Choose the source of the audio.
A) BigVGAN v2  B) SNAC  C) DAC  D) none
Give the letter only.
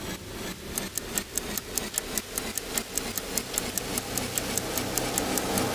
D